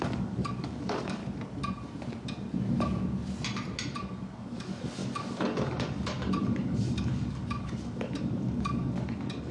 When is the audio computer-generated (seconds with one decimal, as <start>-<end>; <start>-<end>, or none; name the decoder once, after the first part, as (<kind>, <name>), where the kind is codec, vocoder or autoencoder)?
0.0-1.2 (codec, DAC); 3.9-9.5